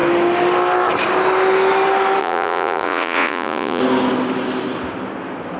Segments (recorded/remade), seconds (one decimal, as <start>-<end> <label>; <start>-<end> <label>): 0.0-2.2 recorded; 2.2-3.8 remade; 3.8-5.6 recorded